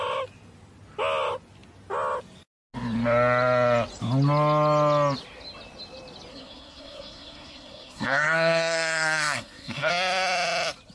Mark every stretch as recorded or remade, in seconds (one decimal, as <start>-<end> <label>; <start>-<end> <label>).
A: 0.0-6.3 recorded; 6.3-9.9 remade; 9.9-10.9 recorded